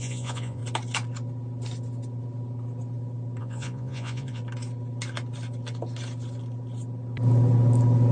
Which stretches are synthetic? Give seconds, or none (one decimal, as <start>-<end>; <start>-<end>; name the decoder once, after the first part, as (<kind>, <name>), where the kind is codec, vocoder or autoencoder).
0.0-0.6 (vocoder, Vocos); 3.4-4.4